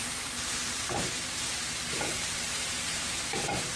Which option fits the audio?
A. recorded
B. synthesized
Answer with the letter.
B